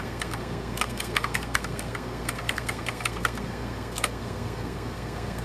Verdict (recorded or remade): remade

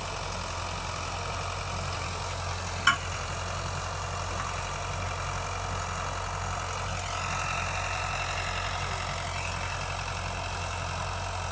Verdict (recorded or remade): recorded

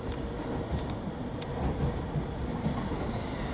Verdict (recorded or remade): recorded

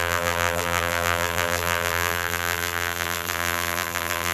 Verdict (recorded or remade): remade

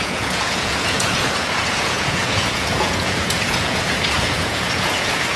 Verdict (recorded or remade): remade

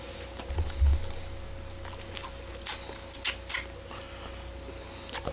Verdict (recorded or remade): recorded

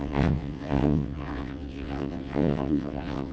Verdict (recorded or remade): remade